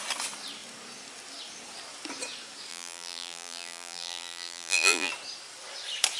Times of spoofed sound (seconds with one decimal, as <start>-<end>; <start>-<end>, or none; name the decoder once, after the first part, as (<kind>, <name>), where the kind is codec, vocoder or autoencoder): 2.7-5.1 (vocoder, BigVGAN v2)